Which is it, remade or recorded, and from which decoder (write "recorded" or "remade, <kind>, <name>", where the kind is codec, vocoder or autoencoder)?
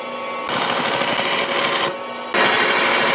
recorded